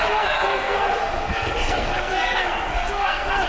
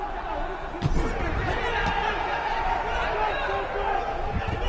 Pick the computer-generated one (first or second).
first